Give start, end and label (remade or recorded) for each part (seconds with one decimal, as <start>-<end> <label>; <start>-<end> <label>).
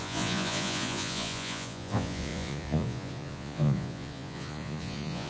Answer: 0.0-5.3 remade